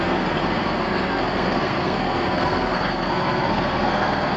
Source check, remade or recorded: remade